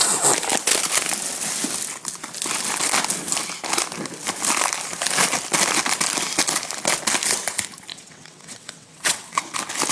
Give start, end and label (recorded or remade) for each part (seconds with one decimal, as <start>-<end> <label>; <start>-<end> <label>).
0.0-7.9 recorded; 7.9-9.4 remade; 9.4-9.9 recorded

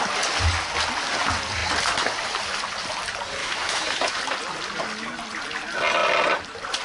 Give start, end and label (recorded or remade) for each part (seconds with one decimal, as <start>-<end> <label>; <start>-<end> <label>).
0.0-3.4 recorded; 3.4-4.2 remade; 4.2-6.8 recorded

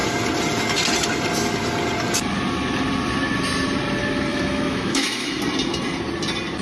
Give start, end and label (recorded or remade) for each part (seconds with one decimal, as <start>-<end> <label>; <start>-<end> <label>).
0.0-4.3 recorded; 4.3-5.4 remade; 5.4-6.6 recorded

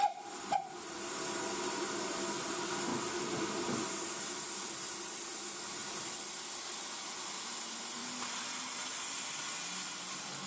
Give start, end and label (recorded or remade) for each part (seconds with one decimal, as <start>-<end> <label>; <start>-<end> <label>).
0.0-10.5 recorded

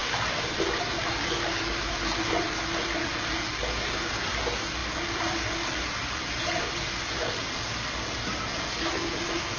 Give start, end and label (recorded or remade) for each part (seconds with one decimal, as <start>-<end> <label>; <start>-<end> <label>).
0.0-1.9 remade; 1.9-4.8 recorded; 4.8-8.4 remade; 8.4-9.6 recorded

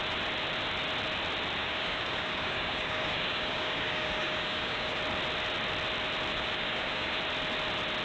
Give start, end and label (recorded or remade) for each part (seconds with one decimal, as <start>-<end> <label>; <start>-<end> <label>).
0.0-1.6 recorded; 1.6-5.0 remade; 5.0-6.3 recorded; 6.3-7.2 remade; 7.2-8.0 recorded

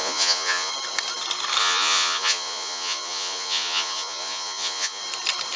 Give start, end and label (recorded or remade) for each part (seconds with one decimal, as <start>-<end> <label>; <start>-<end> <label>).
0.0-0.7 remade; 0.7-1.6 recorded; 1.6-5.0 remade; 5.0-5.6 recorded

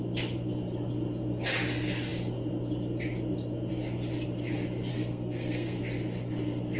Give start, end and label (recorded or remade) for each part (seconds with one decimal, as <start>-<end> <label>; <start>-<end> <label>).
0.0-4.9 recorded; 4.9-5.8 remade; 5.8-6.8 recorded